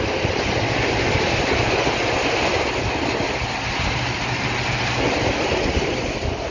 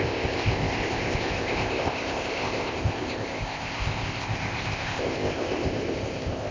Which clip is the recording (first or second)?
first